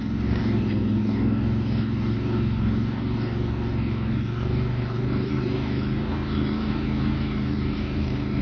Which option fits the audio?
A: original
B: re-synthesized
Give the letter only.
B